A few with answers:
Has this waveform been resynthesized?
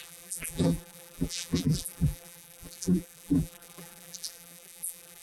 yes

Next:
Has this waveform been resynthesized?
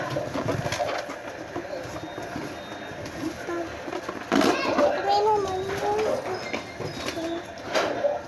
no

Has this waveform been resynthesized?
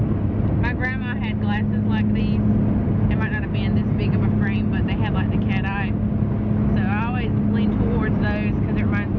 no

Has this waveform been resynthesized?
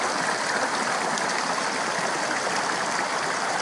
no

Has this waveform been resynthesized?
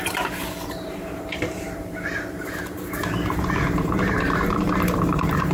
yes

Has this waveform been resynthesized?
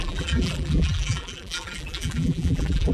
yes